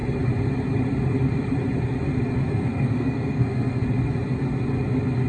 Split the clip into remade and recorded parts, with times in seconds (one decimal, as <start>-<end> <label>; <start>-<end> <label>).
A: 0.0-2.5 recorded; 2.5-3.8 remade; 3.8-5.3 recorded